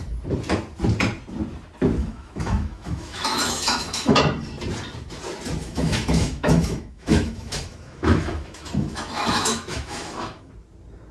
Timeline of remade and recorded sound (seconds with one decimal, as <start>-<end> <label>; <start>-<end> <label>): 0.0-2.0 recorded; 2.0-4.2 remade; 4.2-5.6 recorded; 5.6-10.5 remade; 10.5-11.1 recorded